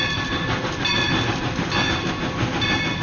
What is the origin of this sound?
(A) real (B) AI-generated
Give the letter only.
A